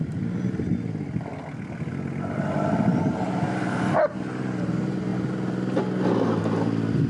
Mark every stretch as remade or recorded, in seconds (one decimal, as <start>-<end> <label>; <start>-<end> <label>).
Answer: 0.0-7.1 recorded